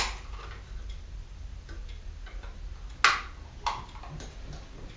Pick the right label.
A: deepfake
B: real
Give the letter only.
B